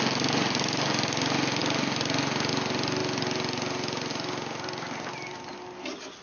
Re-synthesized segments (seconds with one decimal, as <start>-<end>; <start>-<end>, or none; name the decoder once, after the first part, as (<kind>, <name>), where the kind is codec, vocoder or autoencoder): none